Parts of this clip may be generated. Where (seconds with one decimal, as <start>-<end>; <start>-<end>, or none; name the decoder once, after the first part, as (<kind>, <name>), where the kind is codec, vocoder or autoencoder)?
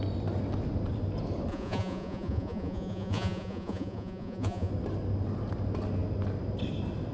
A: 1.5-4.7 (vocoder, Vocos)